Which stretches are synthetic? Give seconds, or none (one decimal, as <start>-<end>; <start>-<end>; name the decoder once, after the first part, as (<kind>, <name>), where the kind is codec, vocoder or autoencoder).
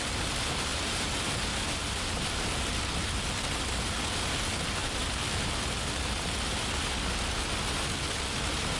0.7-2.5 (vocoder, BigVGAN v2); 4.8-6.9